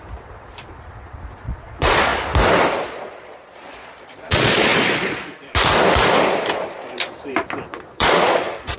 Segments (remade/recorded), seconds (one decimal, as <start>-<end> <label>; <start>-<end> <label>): 0.0-2.1 remade; 2.1-2.9 recorded; 2.9-4.7 remade; 4.7-7.7 recorded; 7.7-8.8 remade